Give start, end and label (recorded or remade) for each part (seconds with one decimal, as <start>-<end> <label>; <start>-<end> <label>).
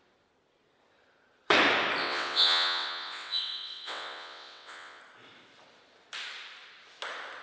0.0-2.0 recorded; 2.0-5.0 remade; 5.0-7.4 recorded